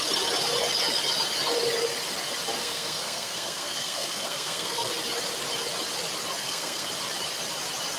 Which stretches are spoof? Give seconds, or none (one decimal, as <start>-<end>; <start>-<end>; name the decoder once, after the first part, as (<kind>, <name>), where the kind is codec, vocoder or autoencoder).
2.6-4.9 (codec, SNAC); 6.4-6.9